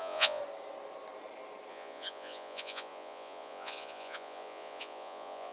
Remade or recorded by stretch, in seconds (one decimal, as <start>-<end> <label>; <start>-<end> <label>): 0.0-0.4 remade; 0.4-1.7 recorded; 1.7-5.5 remade